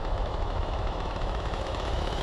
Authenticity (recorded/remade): remade